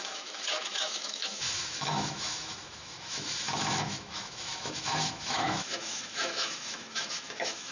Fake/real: fake